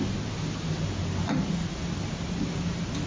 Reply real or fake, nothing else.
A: real